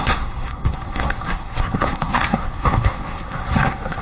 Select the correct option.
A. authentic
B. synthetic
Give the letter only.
B